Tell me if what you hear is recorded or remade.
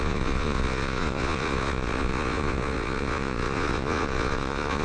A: remade